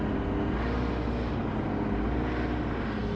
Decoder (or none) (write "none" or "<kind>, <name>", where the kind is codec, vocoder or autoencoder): none